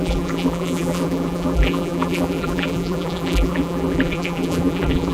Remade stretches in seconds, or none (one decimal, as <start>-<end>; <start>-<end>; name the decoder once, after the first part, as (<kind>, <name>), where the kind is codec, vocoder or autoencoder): 0.0-5.1 (vocoder, BigVGAN v2)